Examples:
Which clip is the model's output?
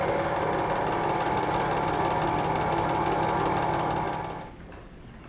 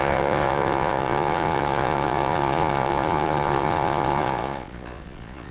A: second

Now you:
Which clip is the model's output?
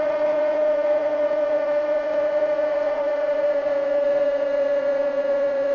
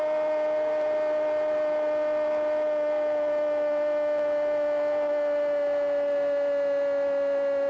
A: first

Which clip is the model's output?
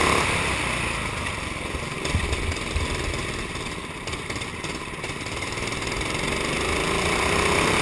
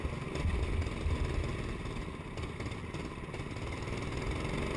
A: first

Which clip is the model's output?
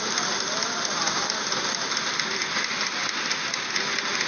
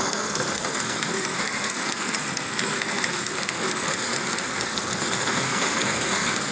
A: second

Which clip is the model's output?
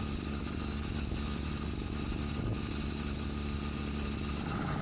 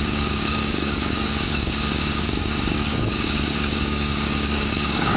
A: second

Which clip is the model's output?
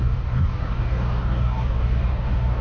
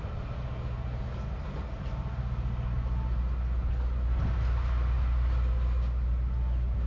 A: first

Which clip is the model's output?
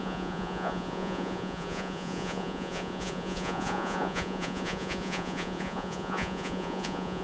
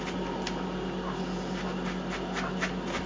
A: first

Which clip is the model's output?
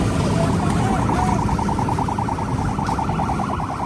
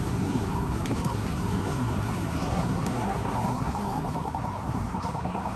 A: second